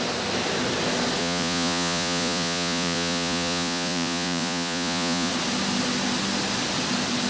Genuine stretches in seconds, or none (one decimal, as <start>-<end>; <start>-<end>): 0.0-1.2; 5.3-7.3